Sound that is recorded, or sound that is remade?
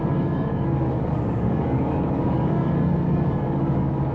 remade